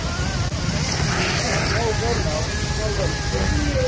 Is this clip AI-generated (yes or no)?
no